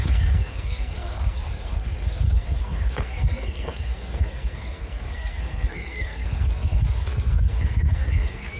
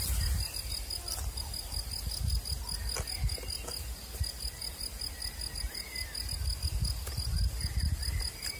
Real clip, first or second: second